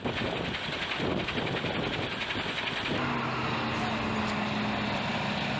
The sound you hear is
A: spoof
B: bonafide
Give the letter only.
B